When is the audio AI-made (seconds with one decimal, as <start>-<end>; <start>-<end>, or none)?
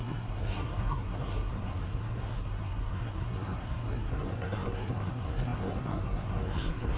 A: 0.0-7.0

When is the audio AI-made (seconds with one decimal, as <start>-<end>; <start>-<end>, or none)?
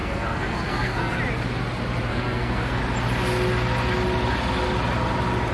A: 0.0-1.2; 2.1-2.8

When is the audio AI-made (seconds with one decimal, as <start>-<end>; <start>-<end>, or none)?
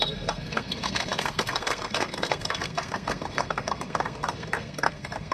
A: 0.0-5.3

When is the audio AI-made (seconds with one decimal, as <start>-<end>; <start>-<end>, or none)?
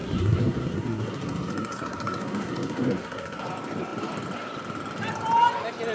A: 0.0-3.5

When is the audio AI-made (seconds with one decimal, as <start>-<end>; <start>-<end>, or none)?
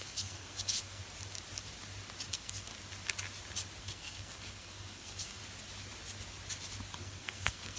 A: 0.0-1.0; 2.3-2.7; 3.8-5.4; 7.0-7.8